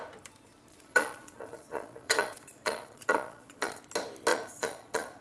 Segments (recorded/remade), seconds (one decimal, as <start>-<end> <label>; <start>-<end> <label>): 0.0-0.7 recorded; 0.7-3.8 remade; 3.8-4.3 recorded; 4.3-5.2 remade